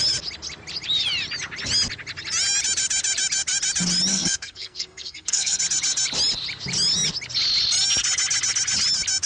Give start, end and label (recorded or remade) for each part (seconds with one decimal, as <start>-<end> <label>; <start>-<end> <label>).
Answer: 0.0-4.1 recorded; 4.1-5.6 remade; 5.6-9.3 recorded

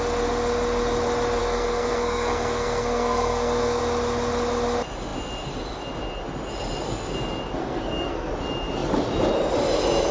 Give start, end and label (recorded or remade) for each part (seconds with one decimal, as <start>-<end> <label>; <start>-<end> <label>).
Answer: 0.0-1.4 recorded; 1.4-3.8 remade; 3.8-7.6 recorded; 7.6-8.3 remade; 8.3-10.1 recorded